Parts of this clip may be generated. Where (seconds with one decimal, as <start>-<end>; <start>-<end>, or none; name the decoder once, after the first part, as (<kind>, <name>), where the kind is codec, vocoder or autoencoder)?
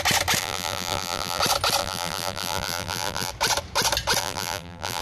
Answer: 0.4-1.4 (vocoder, BigVGAN v2); 1.8-3.3; 4.2-5.0